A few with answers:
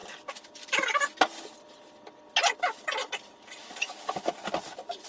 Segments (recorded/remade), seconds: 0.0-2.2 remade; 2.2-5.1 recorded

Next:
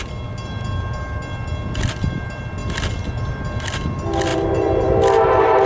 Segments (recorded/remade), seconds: 0.0-4.3 recorded; 4.3-4.9 remade; 4.9-5.7 recorded